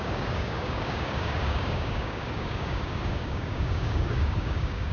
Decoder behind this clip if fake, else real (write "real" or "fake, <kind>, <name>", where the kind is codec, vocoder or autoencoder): fake, codec, DAC